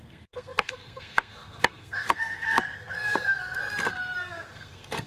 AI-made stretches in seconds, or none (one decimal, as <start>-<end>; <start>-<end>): 0.0-3.6; 4.2-5.1